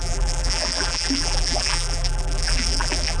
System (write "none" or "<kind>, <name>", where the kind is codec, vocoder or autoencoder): vocoder, BigVGAN v2